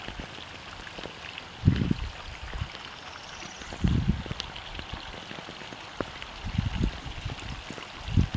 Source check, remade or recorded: recorded